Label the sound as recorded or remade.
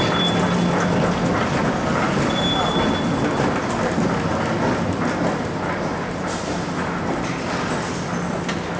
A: recorded